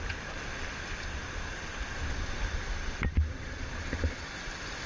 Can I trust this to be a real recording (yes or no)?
yes